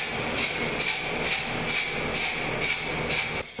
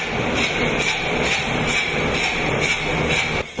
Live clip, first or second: first